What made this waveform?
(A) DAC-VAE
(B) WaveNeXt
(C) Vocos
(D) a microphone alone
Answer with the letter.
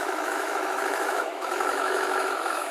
A